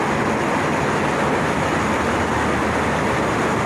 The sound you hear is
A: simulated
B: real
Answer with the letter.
B